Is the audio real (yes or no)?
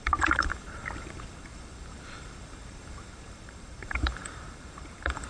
no